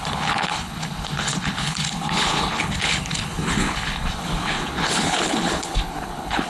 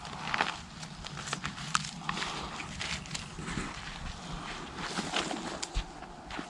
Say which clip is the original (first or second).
second